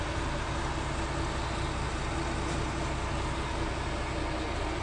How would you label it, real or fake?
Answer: real